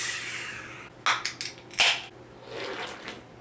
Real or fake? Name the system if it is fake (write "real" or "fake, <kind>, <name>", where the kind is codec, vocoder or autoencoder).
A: real